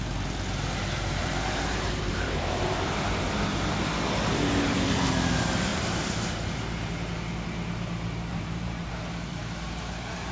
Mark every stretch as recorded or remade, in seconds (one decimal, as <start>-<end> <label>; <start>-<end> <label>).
0.0-1.2 recorded; 1.2-3.3 remade; 3.3-5.7 recorded; 5.7-6.6 remade; 6.6-8.3 recorded; 8.3-8.9 remade; 8.9-10.3 recorded